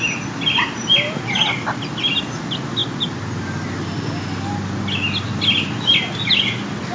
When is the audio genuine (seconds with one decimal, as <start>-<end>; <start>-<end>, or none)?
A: 0.0-6.9